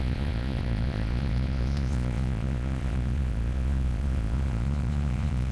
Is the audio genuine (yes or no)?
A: no